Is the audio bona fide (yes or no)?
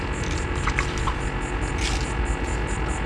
yes